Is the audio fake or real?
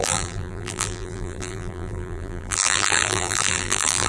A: fake